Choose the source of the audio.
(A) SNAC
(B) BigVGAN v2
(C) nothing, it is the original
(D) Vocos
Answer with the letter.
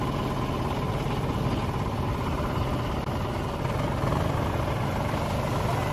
C